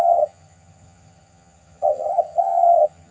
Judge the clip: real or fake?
fake